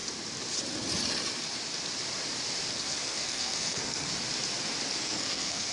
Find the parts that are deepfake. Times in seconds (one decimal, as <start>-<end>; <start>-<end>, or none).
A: 2.7-4.1; 5.0-5.7